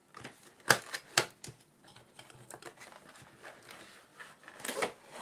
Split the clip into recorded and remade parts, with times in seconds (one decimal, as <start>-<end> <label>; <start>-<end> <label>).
0.0-5.2 recorded